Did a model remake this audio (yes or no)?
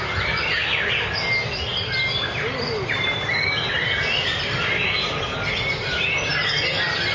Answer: no